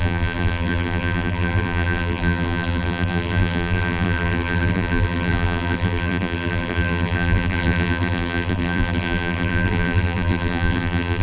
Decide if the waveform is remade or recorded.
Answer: remade